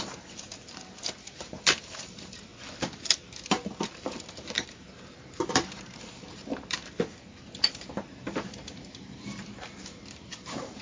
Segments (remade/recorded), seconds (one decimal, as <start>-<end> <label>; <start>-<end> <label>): 0.0-2.5 remade; 2.5-3.5 recorded; 3.5-6.8 remade; 6.8-7.7 recorded; 7.7-10.8 remade